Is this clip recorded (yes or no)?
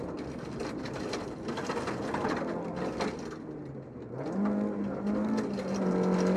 yes